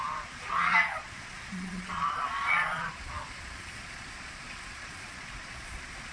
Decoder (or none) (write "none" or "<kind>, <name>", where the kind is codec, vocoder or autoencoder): vocoder, Vocos